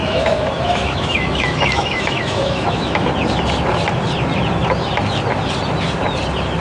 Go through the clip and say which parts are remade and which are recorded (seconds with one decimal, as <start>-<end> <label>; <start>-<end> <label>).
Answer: 0.0-3.1 remade; 3.1-6.6 recorded